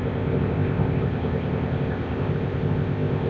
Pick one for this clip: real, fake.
fake